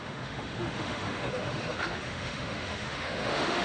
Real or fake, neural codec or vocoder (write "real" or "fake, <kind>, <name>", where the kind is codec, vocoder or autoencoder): fake, autoencoder, DAC-VAE